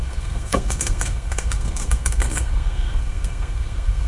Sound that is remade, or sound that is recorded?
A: remade